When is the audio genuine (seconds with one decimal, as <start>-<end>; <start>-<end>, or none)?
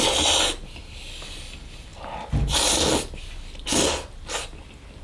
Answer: 0.0-5.0